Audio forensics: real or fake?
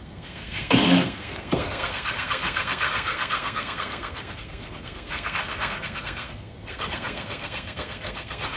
fake